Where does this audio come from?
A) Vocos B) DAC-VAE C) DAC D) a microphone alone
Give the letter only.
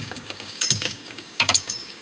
C